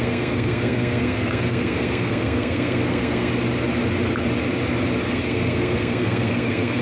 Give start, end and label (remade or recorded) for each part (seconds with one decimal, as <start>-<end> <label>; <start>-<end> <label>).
0.0-3.3 remade; 3.3-5.1 recorded; 5.1-6.8 remade